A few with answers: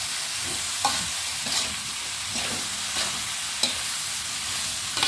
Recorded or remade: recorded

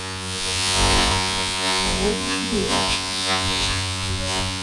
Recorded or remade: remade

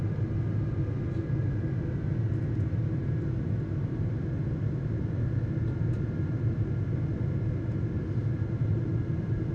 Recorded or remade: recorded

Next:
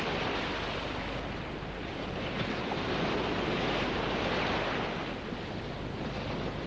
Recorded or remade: recorded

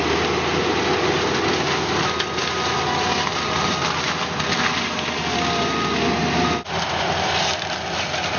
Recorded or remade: recorded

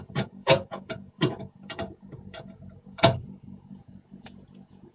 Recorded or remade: remade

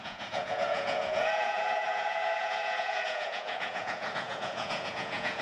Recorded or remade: remade